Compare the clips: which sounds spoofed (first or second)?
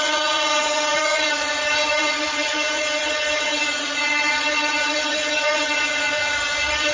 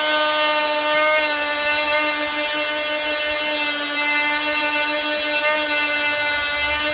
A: first